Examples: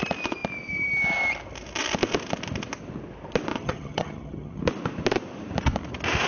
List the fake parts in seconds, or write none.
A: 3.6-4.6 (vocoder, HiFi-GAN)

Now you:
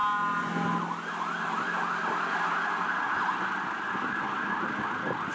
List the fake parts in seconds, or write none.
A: none

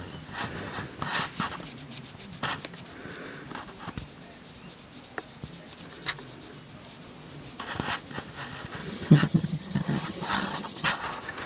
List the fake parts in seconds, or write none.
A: 8.8-10.9 (vocoder, HiFi-GAN)

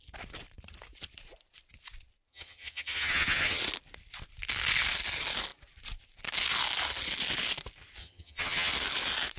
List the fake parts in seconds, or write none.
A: 2.3-3.6 (vocoder, HiFi-GAN); 8.0-8.7

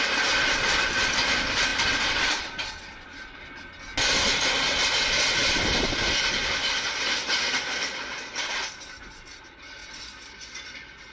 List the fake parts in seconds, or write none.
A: none

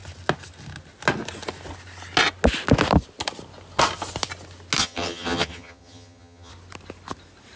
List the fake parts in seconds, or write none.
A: 4.8-6.5 (vocoder, HiFi-GAN)